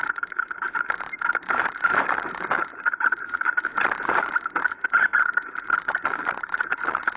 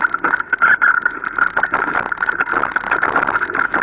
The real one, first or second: second